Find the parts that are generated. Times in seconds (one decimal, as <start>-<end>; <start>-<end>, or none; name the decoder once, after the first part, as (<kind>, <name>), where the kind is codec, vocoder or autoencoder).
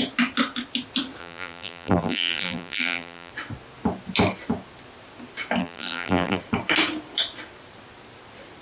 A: 1.2-3.3 (vocoder, BigVGAN v2); 5.6-6.4